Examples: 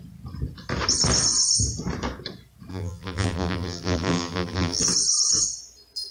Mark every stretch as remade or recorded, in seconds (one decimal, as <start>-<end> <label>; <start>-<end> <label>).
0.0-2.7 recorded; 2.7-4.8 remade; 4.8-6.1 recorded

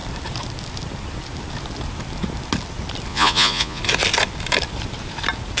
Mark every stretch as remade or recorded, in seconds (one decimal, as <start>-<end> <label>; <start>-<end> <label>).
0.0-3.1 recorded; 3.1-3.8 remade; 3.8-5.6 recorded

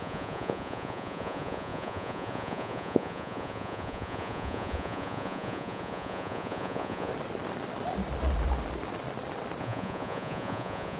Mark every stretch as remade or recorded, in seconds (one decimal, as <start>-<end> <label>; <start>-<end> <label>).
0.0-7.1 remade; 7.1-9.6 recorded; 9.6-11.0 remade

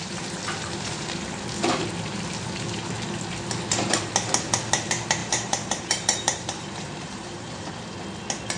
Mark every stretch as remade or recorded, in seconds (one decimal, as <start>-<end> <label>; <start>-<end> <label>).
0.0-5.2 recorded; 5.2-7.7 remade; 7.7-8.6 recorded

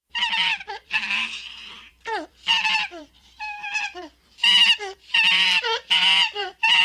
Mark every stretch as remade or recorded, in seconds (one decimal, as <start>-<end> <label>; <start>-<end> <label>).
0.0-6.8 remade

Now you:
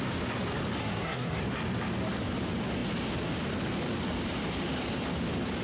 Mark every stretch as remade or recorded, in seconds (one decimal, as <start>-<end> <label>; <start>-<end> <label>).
0.0-0.8 recorded; 0.8-1.4 remade; 1.4-5.6 recorded